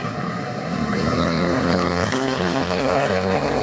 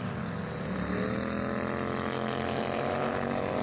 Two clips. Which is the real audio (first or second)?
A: second